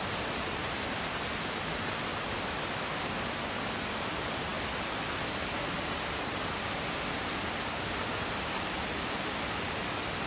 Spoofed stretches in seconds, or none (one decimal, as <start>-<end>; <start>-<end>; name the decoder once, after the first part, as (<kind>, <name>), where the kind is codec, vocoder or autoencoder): none